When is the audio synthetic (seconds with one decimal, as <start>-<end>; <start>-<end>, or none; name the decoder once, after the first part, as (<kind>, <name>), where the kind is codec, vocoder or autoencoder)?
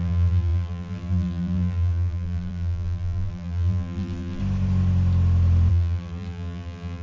0.0-4.4 (vocoder, BigVGAN v2); 5.7-7.0